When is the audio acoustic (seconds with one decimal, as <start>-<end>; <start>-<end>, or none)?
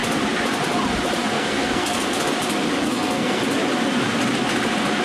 0.0-1.3; 2.1-2.8; 3.4-5.0